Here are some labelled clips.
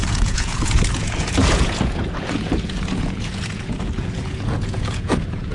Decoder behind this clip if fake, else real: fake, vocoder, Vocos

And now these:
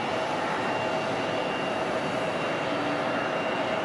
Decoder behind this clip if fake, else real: real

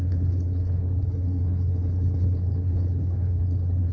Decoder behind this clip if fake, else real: fake, codec, HILCodec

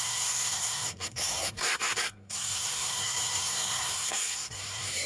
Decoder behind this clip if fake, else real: fake, codec, SNAC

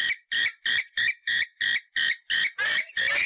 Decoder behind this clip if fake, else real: fake, vocoder, BigVGAN v2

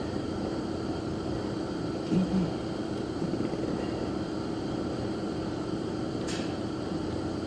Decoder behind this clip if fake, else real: real